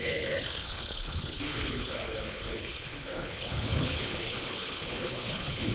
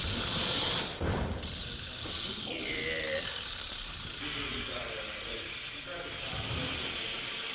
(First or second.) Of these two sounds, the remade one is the first